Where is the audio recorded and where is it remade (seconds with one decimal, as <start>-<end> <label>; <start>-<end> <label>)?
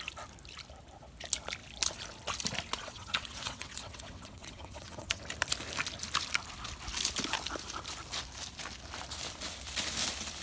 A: 0.0-2.8 recorded; 2.8-5.2 remade; 5.2-10.4 recorded